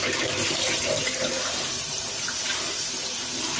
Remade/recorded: remade